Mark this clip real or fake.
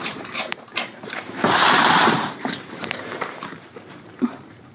fake